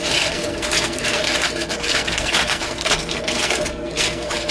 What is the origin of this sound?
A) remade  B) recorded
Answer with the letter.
A